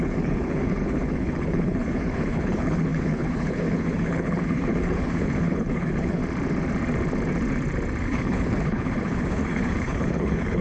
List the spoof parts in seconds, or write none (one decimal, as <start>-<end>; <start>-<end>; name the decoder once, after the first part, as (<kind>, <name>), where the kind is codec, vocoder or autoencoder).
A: 0.0-6.2 (codec, HILCodec); 8.0-10.6